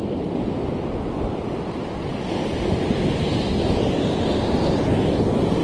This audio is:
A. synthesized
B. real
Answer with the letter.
B